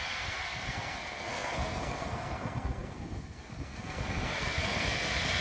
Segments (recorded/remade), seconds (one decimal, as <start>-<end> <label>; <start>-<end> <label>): 0.0-5.4 remade